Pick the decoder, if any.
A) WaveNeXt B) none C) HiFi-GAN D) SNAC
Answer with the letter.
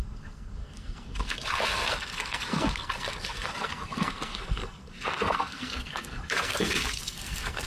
D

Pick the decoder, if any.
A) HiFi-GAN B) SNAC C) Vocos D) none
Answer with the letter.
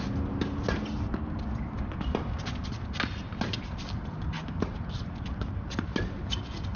D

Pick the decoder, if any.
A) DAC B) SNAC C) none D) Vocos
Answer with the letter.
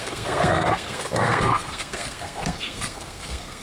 B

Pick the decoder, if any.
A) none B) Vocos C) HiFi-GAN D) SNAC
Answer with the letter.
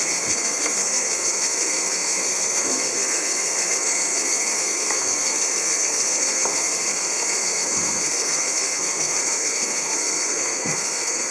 D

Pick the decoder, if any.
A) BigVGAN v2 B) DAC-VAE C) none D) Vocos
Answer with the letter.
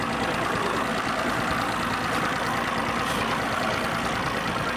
C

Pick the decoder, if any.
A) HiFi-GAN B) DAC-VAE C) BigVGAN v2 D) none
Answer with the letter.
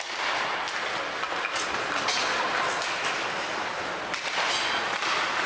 D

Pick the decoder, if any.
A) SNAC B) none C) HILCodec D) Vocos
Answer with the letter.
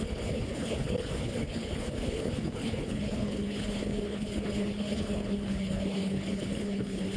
C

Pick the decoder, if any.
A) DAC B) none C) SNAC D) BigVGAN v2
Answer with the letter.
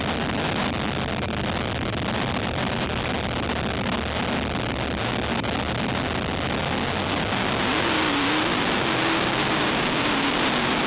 B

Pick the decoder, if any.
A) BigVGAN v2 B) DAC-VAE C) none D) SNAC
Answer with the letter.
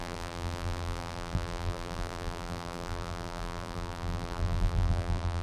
A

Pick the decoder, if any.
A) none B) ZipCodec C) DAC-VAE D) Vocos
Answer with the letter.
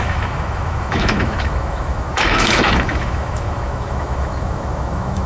C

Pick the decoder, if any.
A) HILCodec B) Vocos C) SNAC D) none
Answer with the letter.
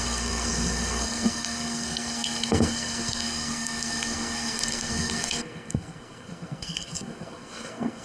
C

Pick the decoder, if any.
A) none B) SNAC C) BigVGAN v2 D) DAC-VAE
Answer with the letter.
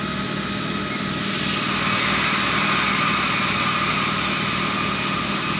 A